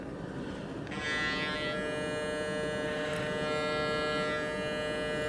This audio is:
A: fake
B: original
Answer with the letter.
B